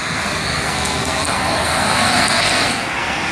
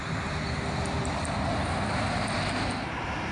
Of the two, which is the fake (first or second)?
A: first